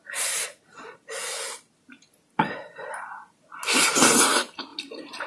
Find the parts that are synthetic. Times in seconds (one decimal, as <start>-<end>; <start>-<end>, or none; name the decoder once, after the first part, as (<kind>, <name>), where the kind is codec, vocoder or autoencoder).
2.6-3.4 (vocoder, BigVGAN v2)